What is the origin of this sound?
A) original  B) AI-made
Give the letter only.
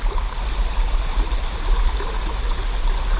A